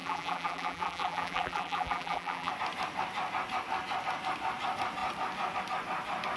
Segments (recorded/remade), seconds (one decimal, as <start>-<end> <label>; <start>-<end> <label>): 0.0-2.5 remade; 2.5-6.4 recorded